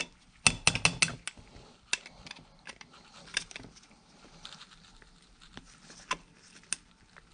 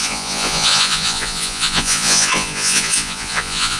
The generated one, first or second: second